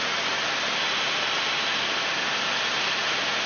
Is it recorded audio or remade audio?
recorded